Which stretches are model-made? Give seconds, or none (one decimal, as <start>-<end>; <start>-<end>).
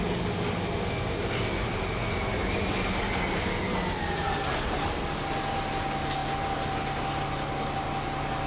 none